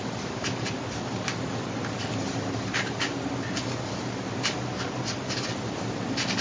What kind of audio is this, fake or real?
real